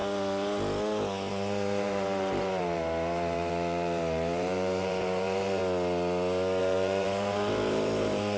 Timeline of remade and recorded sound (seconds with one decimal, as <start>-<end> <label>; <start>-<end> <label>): 0.0-1.3 recorded; 1.3-5.6 remade; 5.6-6.6 recorded; 6.6-8.4 remade

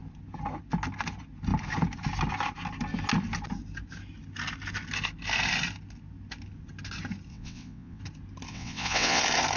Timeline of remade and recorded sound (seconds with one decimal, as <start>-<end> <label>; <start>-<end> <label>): 0.0-7.3 recorded; 7.3-8.0 remade; 8.0-8.5 recorded; 8.5-9.2 remade; 9.2-9.6 recorded

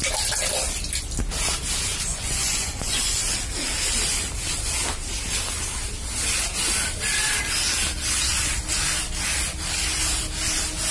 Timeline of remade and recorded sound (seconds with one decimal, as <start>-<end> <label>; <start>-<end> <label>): 0.0-2.1 recorded; 2.1-3.2 remade; 3.2-10.9 recorded

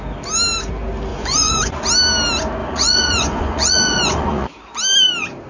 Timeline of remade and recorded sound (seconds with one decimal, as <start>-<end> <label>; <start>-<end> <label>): 0.0-1.1 recorded; 1.1-1.7 remade; 1.7-2.6 recorded; 2.6-4.5 remade; 4.5-5.5 recorded

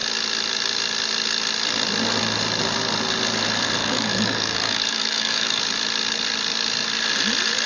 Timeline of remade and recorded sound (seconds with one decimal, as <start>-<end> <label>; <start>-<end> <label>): 0.0-3.8 recorded; 3.8-5.6 remade; 5.6-7.7 recorded

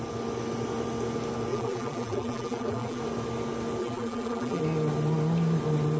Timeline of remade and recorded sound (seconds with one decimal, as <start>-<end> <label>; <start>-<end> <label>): 0.0-1.5 recorded; 1.5-3.0 remade; 3.0-3.8 recorded; 3.8-4.6 remade; 4.6-6.0 recorded

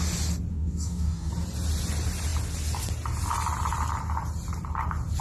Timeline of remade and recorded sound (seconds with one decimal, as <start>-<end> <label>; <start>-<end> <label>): 0.0-0.5 recorded; 0.5-1.3 remade; 1.3-5.2 recorded

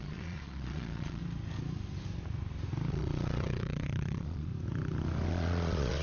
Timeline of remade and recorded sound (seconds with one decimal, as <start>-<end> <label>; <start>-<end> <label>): 0.0-1.2 remade; 1.2-2.9 recorded; 2.9-4.5 remade; 4.5-5.3 recorded; 5.3-6.0 remade